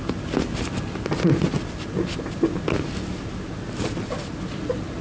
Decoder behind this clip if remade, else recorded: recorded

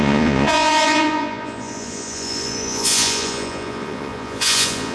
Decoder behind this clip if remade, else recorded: remade, vocoder, Vocos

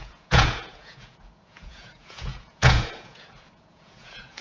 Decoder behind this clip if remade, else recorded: remade, vocoder, Vocos